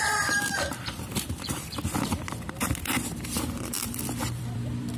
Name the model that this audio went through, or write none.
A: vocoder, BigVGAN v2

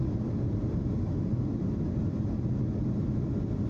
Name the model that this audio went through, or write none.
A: none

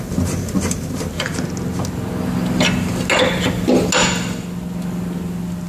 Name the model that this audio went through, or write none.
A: none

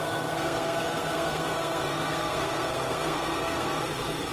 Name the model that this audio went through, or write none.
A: codec, SNAC